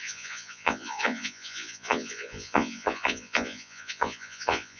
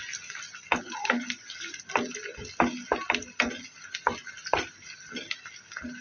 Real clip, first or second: second